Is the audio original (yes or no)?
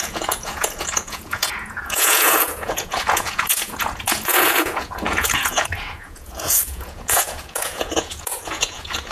no